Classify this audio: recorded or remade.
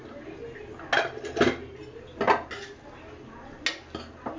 recorded